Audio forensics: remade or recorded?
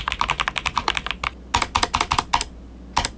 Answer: recorded